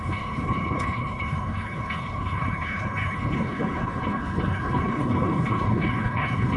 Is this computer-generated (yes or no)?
yes